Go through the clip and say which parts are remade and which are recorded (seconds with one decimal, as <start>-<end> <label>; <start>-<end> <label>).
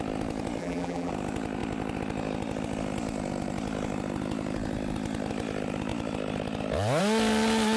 0.0-0.6 recorded; 0.6-1.1 remade; 1.1-7.8 recorded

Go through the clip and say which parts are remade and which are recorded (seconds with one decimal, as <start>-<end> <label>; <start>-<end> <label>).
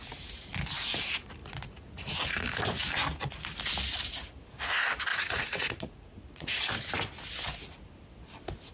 0.0-1.4 recorded; 1.4-2.3 remade; 2.3-5.1 recorded; 5.1-6.6 remade; 6.6-8.7 recorded